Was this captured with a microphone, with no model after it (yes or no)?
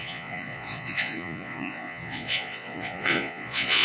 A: no